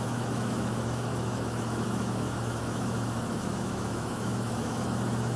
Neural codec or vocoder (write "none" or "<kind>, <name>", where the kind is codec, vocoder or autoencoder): autoencoder, DAC-VAE